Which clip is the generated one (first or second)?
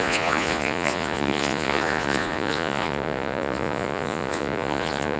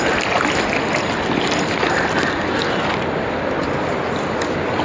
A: first